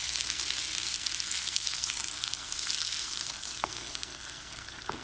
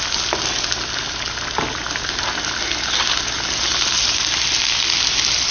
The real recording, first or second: second